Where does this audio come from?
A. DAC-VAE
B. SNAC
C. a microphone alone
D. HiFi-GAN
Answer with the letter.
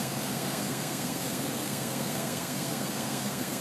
B